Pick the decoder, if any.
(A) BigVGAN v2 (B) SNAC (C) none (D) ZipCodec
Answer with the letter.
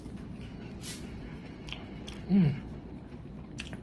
C